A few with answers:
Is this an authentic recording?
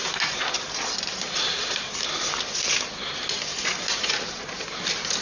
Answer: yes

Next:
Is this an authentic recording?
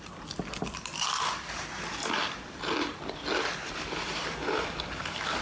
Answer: yes